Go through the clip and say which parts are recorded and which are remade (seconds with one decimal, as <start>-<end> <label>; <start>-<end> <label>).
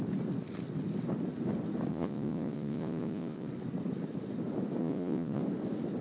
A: 0.0-1.9 recorded; 1.9-3.5 remade; 3.5-4.8 recorded; 4.8-5.4 remade; 5.4-6.0 recorded